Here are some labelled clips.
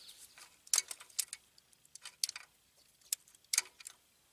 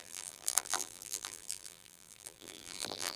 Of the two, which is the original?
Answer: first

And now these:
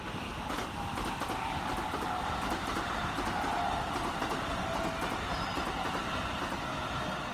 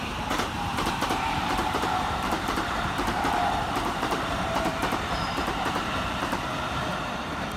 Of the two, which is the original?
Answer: first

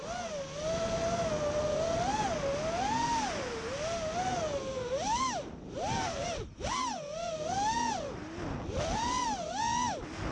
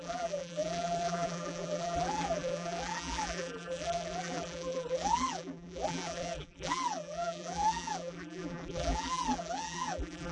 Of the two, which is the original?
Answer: first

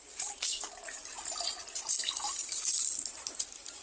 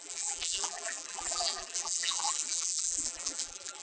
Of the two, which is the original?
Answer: first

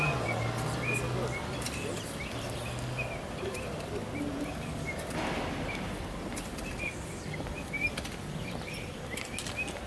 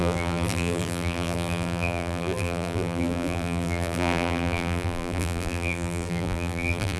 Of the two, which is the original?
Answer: first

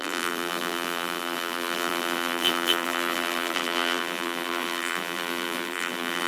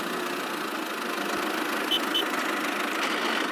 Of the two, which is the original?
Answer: second